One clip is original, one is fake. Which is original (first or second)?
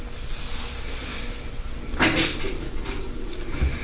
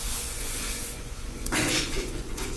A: first